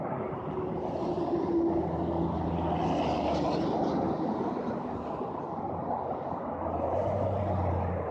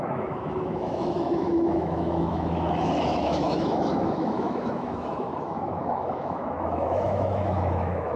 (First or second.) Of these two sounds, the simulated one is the second